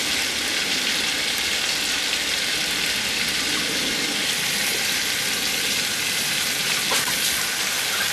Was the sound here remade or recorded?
recorded